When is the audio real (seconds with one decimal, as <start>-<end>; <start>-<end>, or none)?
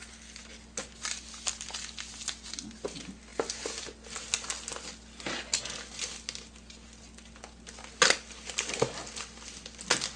0.0-10.2